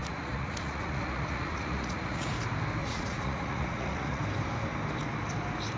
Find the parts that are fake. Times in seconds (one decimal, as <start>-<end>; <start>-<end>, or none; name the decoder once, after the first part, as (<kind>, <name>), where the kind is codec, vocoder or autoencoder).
0.0-2.3 (vocoder, Vocos); 2.8-4.2